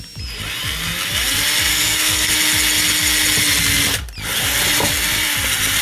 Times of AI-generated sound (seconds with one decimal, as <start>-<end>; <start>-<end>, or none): 1.7-2.3